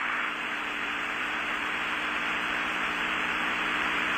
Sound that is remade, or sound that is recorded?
remade